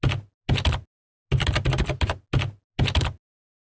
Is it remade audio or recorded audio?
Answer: recorded